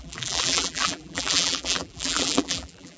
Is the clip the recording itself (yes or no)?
no